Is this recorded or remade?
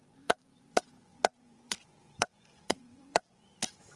remade